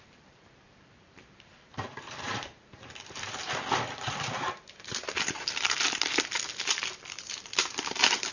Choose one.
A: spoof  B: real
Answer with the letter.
A